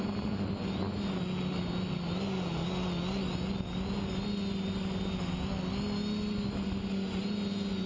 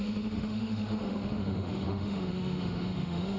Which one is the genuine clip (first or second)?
first